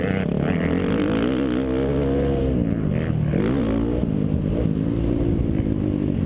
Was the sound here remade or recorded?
recorded